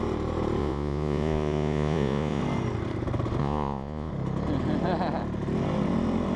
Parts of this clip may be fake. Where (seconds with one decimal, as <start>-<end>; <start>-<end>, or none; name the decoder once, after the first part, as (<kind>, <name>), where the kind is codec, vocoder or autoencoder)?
0.6-2.4 (vocoder, Vocos); 3.4-4.1